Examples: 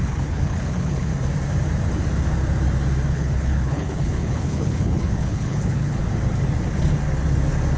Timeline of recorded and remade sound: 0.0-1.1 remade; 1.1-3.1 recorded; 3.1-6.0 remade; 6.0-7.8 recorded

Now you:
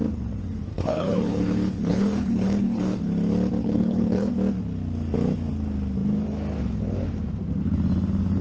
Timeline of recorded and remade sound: 0.0-0.7 recorded; 0.7-3.0 remade; 3.0-3.6 recorded; 3.6-4.3 remade; 4.3-8.4 recorded

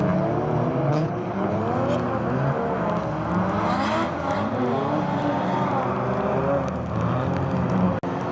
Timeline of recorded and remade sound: 0.0-0.9 recorded; 0.9-1.6 remade; 1.6-8.3 recorded

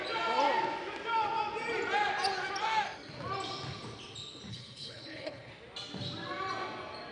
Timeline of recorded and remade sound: 0.0-4.5 recorded; 4.5-5.5 remade; 5.5-7.1 recorded

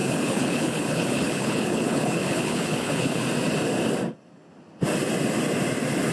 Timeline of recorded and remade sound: 0.0-3.2 remade; 3.2-6.1 recorded

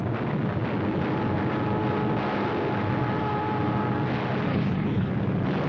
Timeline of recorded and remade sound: 0.0-4.5 recorded; 4.5-5.1 remade; 5.1-5.7 recorded

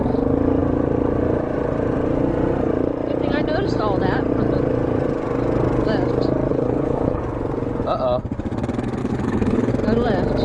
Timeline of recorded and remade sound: 0.0-6.5 recorded; 6.5-7.2 remade; 7.2-9.0 recorded; 9.0-9.7 remade; 9.7-10.4 recorded